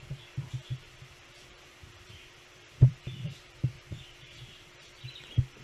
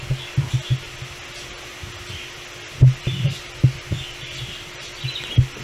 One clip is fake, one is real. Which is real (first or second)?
second